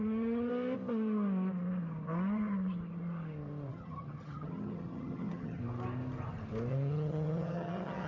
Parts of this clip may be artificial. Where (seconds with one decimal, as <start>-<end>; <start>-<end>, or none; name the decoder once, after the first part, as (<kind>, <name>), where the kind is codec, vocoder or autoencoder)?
0.0-0.5 (vocoder, HiFi-GAN); 3.7-5.6; 6.7-8.1